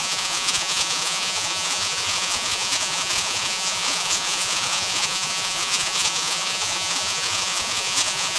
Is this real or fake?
fake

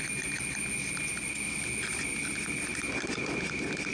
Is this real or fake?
real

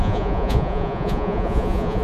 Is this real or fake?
fake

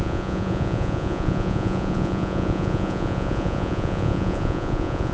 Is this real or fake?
fake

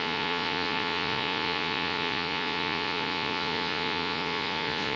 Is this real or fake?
fake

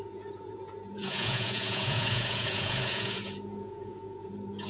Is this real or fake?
fake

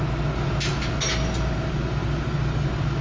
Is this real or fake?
real